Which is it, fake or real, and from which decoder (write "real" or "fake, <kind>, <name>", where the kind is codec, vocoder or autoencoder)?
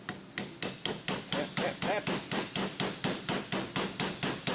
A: real